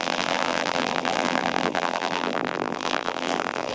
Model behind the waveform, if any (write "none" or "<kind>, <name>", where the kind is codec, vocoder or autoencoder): vocoder, BigVGAN v2